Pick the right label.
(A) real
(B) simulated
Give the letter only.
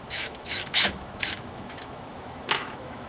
B